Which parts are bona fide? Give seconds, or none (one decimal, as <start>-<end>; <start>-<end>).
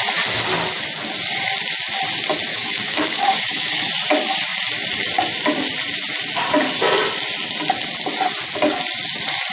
0.0-2.5; 3.9-9.5